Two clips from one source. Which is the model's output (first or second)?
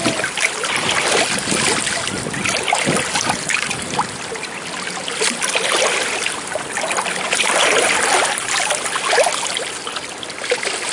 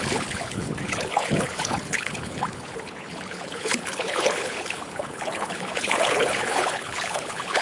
second